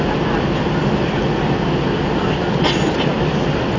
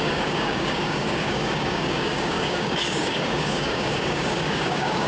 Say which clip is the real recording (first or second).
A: first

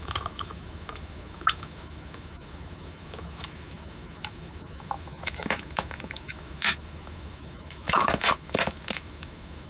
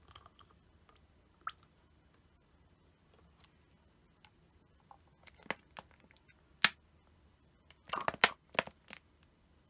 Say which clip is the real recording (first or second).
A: second